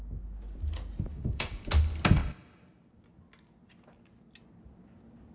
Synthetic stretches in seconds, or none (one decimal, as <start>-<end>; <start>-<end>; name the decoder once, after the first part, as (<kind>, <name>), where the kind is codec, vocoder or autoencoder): 1.1-1.7 (codec, DAC)